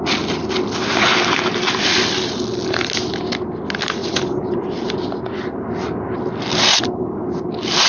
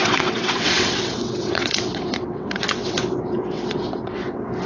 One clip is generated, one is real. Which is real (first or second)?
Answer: first